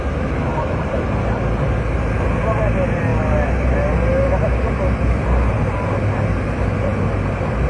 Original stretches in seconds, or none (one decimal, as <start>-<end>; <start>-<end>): 0.0-0.5; 1.1-7.7